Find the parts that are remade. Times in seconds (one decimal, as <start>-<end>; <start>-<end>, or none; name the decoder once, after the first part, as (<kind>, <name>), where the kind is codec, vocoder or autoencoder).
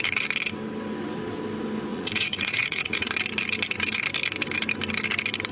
1.9-3.1 (vocoder, Vocos)